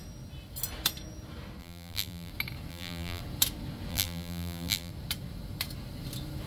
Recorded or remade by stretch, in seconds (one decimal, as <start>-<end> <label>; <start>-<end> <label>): 0.0-1.6 recorded; 1.6-2.3 remade; 2.3-2.7 recorded; 2.7-3.2 remade; 3.2-3.9 recorded; 3.9-4.9 remade; 4.9-6.5 recorded